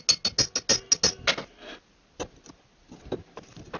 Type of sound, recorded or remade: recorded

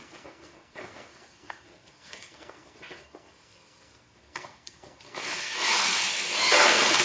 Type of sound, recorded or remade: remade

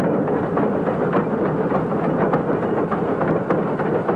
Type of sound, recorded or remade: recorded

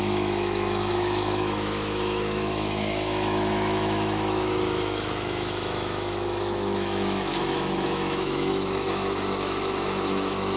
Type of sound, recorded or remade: remade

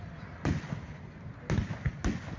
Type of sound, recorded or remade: recorded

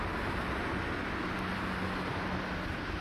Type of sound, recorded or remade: recorded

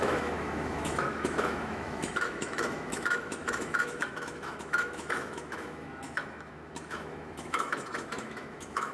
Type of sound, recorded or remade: remade